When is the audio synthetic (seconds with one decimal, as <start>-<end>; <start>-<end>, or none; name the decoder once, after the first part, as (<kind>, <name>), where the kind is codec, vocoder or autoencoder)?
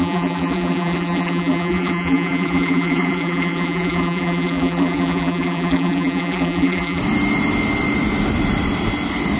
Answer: 0.0-7.0 (vocoder, BigVGAN v2)